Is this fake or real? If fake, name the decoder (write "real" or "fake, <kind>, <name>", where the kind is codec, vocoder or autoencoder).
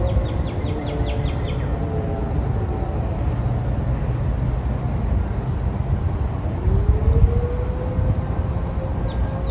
real